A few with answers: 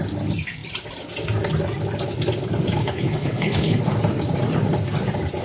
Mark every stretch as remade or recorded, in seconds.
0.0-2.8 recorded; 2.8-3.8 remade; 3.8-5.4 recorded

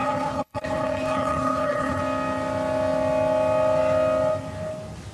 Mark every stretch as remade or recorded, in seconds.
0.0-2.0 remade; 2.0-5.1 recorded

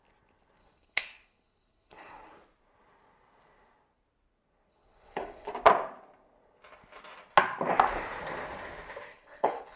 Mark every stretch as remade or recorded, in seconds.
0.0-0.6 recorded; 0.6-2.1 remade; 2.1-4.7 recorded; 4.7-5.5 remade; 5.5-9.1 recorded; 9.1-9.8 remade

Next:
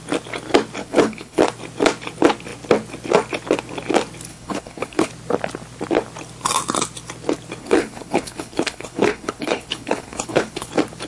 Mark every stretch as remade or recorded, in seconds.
0.0-0.8 recorded; 0.8-1.4 remade; 1.4-4.3 recorded; 4.3-5.1 remade; 5.1-7.6 recorded; 7.6-10.7 remade; 10.7-11.1 recorded

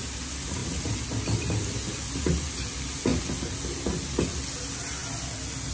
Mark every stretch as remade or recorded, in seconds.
0.0-5.7 recorded

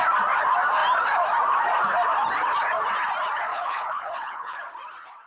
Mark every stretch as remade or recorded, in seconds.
0.0-3.5 recorded; 3.5-4.6 remade; 4.6-5.3 recorded

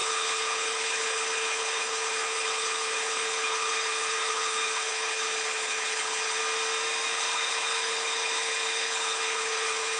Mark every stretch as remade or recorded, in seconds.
0.0-6.4 remade; 6.4-7.1 recorded; 7.1-10.0 remade